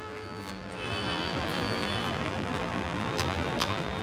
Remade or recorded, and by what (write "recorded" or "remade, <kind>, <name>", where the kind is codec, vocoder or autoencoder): remade, vocoder, BigVGAN v2